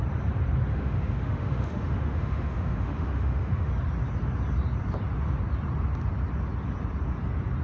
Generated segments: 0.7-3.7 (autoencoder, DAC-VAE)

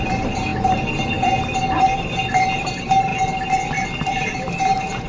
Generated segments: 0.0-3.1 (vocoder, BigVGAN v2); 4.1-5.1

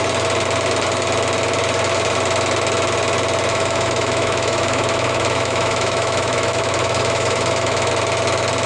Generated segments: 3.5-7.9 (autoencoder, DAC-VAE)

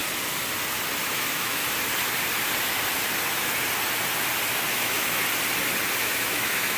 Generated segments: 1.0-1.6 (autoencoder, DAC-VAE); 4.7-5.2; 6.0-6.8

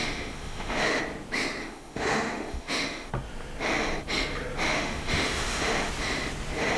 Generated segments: 0.0-1.0 (autoencoder, DAC-VAE); 1.6-3.1; 4.6-5.9

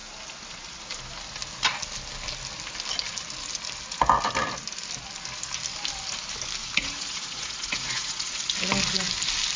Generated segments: 6.6-8.4 (vocoder, Vocos)